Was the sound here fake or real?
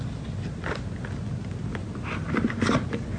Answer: real